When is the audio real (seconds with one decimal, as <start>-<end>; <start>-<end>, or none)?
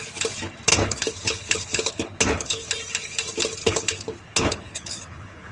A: 0.0-0.7; 2.7-3.6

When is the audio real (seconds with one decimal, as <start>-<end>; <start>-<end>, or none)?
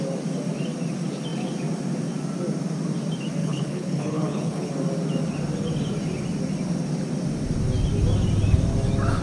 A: 0.0-3.4; 4.7-9.2